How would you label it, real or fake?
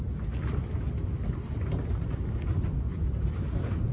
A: real